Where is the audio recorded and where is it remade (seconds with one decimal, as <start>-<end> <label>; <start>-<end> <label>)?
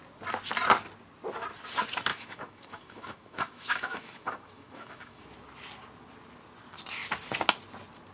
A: 0.0-2.1 recorded; 2.1-5.2 remade; 5.2-8.1 recorded